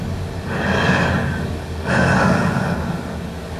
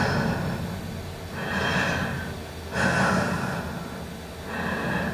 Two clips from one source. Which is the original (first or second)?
second